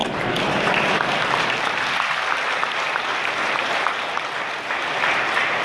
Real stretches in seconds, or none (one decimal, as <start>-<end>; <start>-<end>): 0.0-5.6